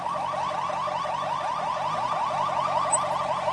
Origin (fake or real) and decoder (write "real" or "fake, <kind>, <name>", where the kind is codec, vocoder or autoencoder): real